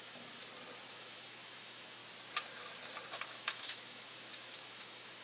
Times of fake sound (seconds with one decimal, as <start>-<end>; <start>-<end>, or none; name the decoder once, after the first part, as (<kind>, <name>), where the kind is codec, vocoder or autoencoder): 0.0-0.4 (autoencoder, DAC-VAE); 0.9-2.0; 3.3-5.2